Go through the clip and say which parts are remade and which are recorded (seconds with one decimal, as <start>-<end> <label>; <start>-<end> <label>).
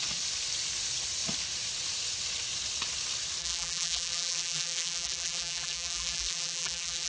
0.0-3.4 recorded; 3.4-7.1 remade